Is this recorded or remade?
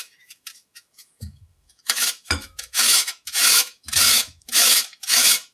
remade